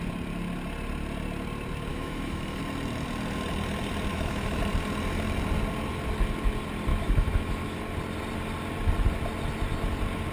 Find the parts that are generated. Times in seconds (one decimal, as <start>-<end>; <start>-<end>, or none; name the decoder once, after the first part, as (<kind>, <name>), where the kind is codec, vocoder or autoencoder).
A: 1.9-2.6 (autoencoder, DAC-VAE); 4.1-4.6; 6.9-7.8